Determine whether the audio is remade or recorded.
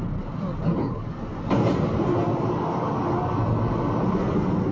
recorded